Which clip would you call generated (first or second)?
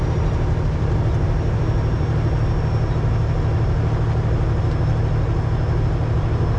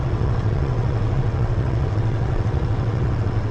second